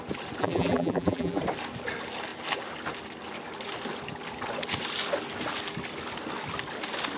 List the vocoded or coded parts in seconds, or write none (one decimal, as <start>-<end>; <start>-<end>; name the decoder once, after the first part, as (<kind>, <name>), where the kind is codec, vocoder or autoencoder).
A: 0.4-1.4 (vocoder, BigVGAN v2)